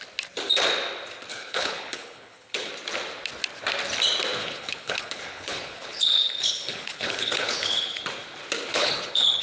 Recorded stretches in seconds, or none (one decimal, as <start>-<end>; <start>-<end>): 0.0-1.3; 2.7-4.4; 8.0-8.7